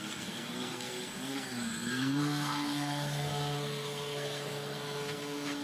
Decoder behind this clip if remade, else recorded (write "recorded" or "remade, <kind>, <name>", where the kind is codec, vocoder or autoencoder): remade, codec, SNAC